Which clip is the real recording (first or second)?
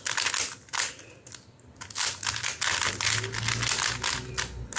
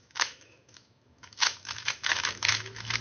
first